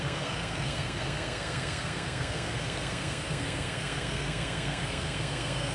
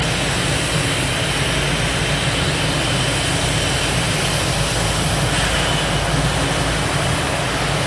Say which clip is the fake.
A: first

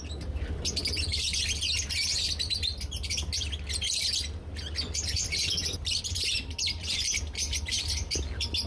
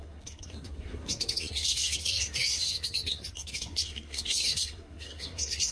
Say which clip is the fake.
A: second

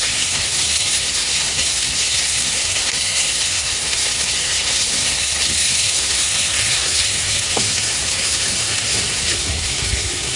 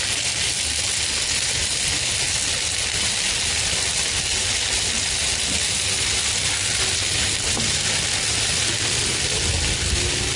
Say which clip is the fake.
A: first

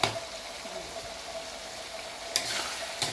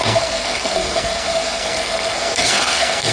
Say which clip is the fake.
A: second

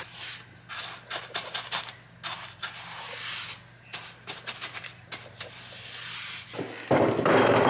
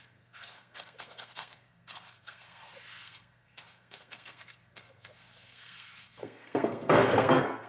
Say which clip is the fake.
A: second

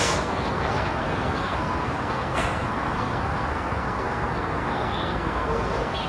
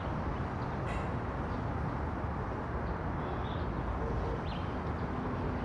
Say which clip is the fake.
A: first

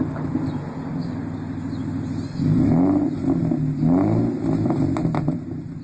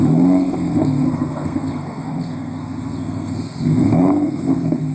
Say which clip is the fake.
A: second